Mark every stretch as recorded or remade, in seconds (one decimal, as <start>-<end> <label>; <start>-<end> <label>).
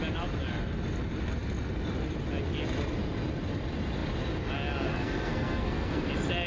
0.0-4.9 recorded; 4.9-6.1 remade; 6.1-6.5 recorded